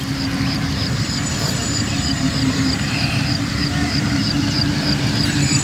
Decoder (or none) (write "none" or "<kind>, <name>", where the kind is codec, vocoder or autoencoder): vocoder, BigVGAN v2